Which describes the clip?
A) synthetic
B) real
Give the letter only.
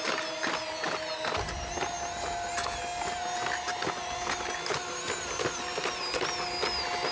B